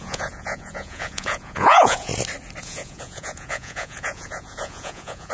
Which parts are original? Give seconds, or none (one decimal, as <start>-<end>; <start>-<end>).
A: 2.1-2.6